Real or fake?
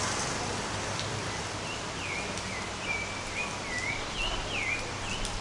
real